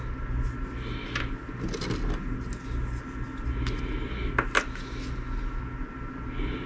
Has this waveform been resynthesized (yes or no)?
no